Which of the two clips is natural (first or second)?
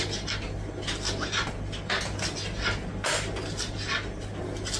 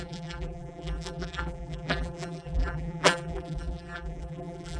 first